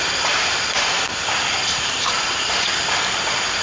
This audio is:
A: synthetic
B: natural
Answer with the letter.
A